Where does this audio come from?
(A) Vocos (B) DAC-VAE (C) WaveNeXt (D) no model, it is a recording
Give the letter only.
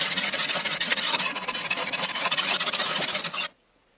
A